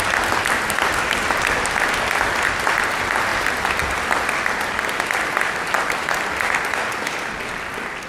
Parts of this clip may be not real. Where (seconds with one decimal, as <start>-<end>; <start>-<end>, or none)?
none